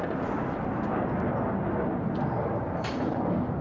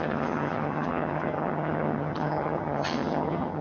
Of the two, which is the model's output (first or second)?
second